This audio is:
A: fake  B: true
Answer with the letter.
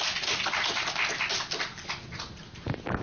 B